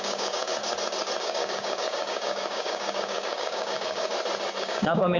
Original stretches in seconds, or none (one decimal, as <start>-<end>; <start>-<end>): 0.6-1.2; 4.1-4.6